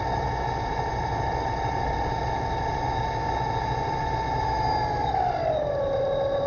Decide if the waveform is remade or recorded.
recorded